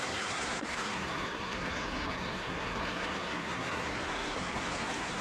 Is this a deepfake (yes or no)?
yes